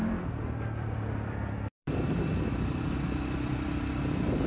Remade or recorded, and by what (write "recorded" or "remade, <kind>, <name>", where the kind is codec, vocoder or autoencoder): remade, vocoder, BigVGAN v2